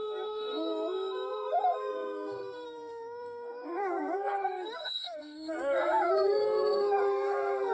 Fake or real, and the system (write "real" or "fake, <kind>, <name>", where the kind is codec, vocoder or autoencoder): fake, codec, SNAC